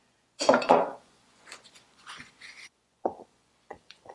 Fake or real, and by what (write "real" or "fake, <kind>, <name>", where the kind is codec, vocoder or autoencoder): fake, vocoder, Vocos